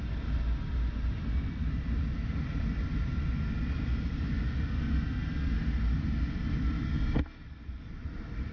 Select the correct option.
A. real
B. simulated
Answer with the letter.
A